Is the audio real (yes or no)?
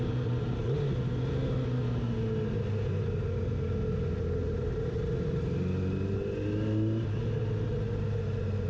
yes